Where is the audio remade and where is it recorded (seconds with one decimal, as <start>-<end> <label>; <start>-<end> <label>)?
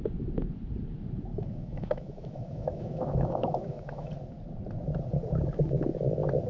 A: 0.0-1.3 recorded; 1.3-4.1 remade; 4.1-6.5 recorded